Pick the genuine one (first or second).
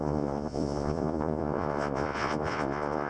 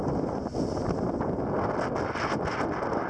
second